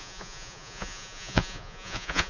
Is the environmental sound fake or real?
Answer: fake